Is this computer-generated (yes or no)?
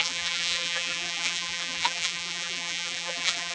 yes